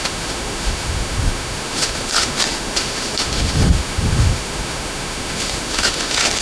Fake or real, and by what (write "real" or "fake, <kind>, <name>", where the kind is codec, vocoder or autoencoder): fake, autoencoder, DAC-VAE